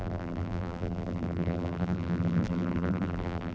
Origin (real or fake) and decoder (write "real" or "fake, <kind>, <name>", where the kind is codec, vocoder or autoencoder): fake, vocoder, BigVGAN v2